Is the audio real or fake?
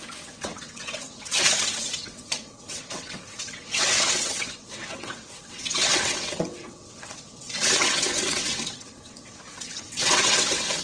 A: fake